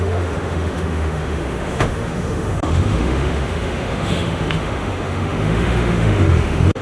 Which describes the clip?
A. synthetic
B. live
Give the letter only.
A